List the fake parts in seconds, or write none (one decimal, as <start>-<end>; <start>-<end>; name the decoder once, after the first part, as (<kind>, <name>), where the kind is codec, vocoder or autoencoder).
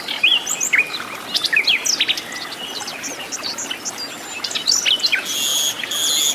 none